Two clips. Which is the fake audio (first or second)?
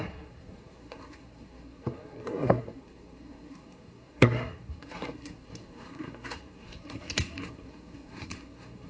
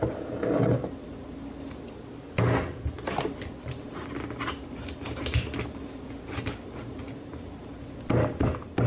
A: first